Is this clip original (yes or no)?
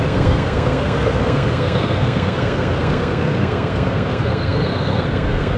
no